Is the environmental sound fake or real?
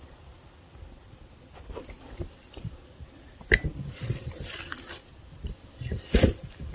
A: fake